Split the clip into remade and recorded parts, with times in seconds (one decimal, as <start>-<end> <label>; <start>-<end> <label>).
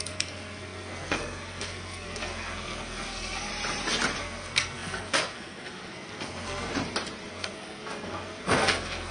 0.0-3.5 remade; 3.5-4.2 recorded; 4.2-6.7 remade; 6.7-7.3 recorded; 7.3-9.1 remade